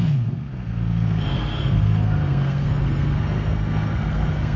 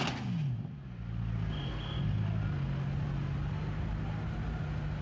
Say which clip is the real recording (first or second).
second